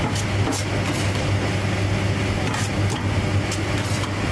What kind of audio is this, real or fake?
real